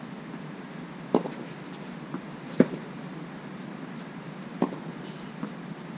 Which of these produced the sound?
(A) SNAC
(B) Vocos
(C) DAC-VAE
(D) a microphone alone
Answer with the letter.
D